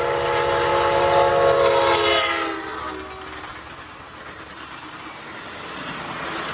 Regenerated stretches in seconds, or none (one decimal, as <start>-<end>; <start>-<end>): none

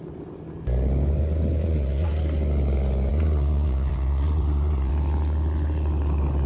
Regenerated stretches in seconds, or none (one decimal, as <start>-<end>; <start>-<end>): 1.6-2.1; 3.1-4.9

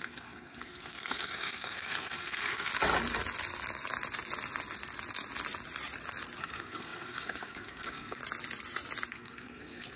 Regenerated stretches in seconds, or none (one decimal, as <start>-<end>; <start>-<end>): 0.0-2.7; 6.4-8.2; 9.1-10.0